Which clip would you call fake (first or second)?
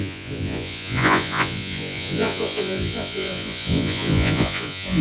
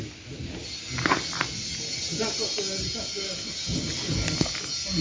first